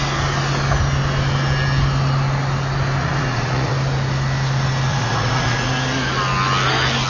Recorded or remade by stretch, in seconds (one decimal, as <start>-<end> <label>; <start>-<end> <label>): 0.0-3.0 recorded; 3.0-3.7 remade; 3.7-4.9 recorded; 4.9-5.7 remade; 5.7-7.1 recorded